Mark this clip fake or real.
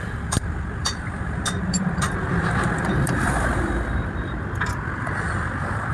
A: fake